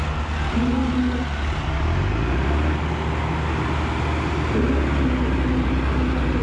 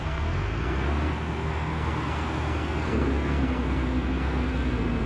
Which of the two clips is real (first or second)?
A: first